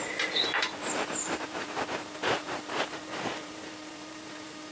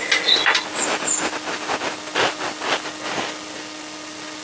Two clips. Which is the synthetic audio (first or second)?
first